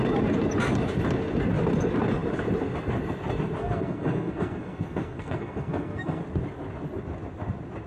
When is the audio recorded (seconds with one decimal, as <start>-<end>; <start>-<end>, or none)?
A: 0.0-3.6; 6.2-7.9